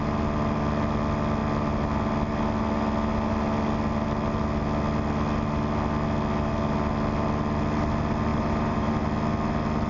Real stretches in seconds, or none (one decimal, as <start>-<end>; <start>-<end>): 0.0-8.3; 8.9-9.9